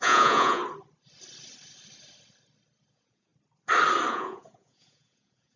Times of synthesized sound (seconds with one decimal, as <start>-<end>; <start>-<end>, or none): 0.0-0.6; 2.9-3.3; 4.1-5.6